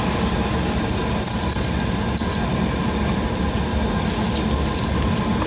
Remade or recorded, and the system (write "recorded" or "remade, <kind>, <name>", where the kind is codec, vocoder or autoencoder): recorded